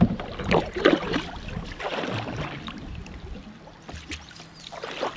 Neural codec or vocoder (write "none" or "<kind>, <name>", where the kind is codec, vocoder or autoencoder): none